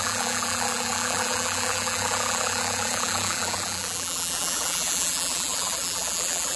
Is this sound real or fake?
fake